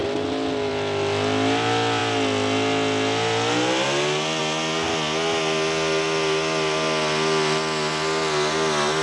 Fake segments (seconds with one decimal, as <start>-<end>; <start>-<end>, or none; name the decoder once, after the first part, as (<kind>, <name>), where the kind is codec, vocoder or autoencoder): none